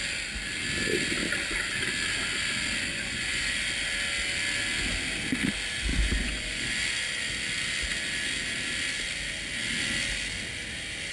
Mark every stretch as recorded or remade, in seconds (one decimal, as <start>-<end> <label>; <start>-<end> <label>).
0.0-2.9 recorded; 2.9-3.5 remade; 3.5-5.9 recorded; 5.9-6.7 remade; 6.7-11.1 recorded